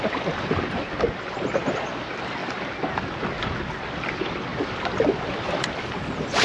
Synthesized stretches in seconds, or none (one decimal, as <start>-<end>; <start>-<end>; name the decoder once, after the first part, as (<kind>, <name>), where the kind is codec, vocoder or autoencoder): none